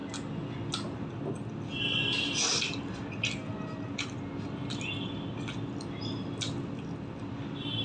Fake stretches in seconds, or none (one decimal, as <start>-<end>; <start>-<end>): none